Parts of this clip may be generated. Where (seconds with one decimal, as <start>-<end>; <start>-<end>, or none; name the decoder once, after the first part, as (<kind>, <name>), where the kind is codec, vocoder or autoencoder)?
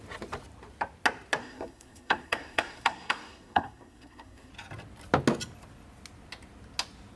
1.4-4.5 (codec, SNAC)